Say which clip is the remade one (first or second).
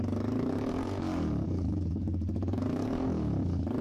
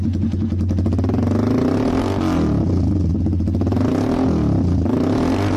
first